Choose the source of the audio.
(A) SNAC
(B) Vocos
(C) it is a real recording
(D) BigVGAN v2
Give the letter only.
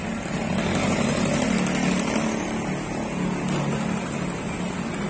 C